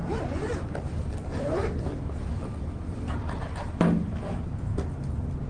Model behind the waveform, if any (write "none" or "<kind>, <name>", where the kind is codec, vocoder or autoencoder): none